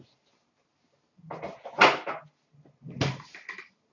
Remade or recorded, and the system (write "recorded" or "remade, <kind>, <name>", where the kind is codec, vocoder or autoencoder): recorded